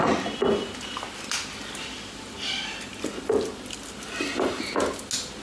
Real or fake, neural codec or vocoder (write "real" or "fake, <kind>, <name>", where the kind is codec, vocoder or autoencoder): real